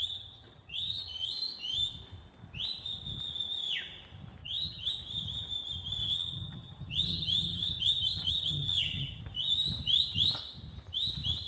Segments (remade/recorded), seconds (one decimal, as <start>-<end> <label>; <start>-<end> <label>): 0.0-1.3 remade; 1.3-4.4 recorded; 4.4-4.9 remade; 4.9-6.0 recorded; 6.0-9.2 remade; 9.2-11.5 recorded

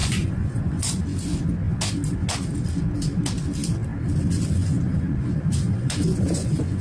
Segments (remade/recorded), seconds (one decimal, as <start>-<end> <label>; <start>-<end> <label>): 0.0-1.0 remade; 1.0-4.6 recorded; 4.6-6.8 remade

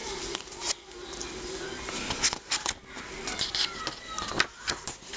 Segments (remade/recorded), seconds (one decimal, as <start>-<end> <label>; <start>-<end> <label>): 0.0-5.2 recorded

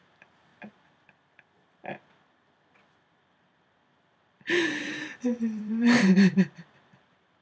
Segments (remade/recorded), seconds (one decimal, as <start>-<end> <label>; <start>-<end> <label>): 0.0-0.5 remade; 0.5-4.9 recorded; 4.9-7.4 remade